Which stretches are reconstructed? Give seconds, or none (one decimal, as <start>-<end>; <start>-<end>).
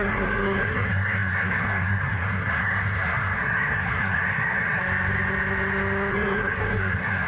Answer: 0.0-4.8; 6.1-7.3